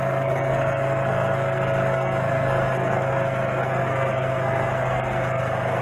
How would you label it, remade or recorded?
remade